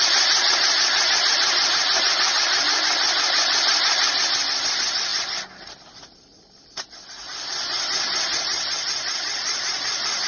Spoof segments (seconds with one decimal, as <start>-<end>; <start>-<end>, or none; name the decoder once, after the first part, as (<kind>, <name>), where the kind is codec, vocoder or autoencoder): none